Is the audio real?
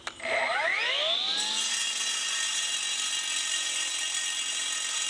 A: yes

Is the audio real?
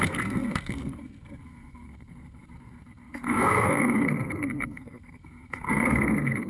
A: no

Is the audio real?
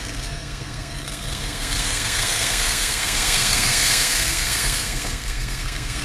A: no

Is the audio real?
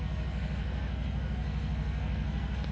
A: no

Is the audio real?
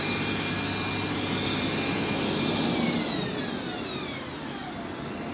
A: yes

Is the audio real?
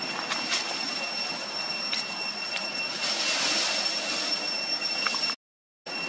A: yes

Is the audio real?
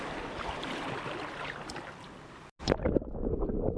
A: yes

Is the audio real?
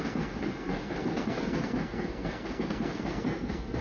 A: no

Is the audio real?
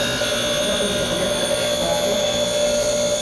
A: yes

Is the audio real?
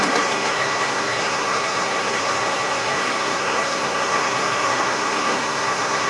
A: no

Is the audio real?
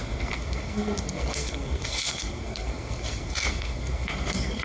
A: no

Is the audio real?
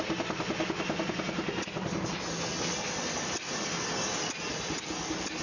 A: yes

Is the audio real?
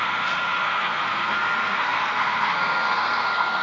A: no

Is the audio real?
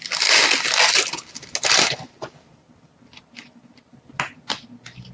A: yes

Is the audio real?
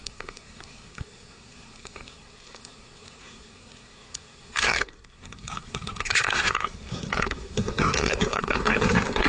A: no